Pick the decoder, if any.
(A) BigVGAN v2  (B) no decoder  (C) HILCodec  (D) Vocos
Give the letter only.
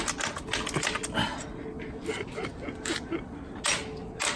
B